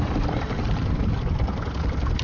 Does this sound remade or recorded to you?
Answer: recorded